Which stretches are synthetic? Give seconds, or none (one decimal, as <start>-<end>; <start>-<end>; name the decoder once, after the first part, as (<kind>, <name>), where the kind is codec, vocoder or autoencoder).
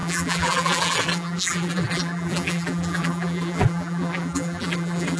0.0-5.2 (vocoder, BigVGAN v2)